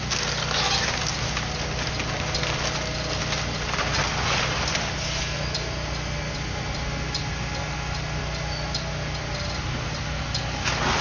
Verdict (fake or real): real